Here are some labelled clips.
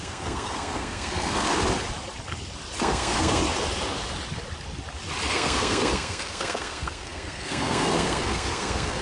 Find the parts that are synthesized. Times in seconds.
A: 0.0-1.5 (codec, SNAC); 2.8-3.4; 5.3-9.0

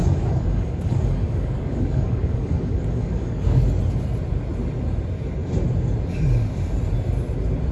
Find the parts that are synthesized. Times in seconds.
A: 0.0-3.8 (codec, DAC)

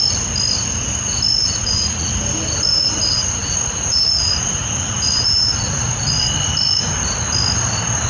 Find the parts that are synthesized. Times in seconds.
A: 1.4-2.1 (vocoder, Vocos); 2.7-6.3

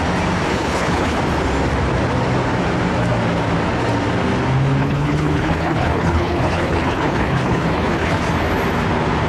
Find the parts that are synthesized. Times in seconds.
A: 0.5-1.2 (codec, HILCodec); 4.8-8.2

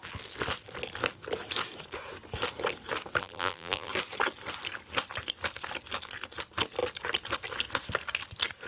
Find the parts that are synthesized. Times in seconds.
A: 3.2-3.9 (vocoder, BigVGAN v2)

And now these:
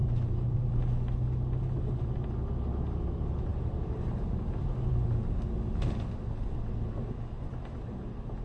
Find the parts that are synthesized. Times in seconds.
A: 0.0-0.8 (vocoder, BigVGAN v2)